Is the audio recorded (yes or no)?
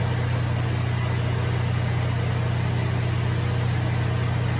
yes